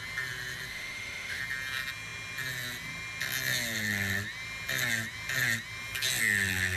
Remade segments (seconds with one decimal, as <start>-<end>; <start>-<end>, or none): 0.7-1.4